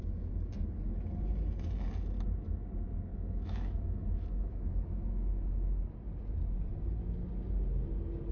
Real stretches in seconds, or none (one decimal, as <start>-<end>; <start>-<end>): 0.0-3.1; 5.8-8.3